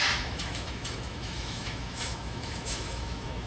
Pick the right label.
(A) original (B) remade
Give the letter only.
B